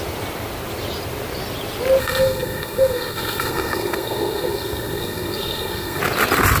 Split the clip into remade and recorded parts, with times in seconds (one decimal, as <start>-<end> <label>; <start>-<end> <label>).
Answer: 0.0-2.0 recorded; 2.0-6.0 remade; 6.0-6.6 recorded